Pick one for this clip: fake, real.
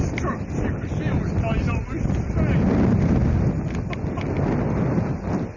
real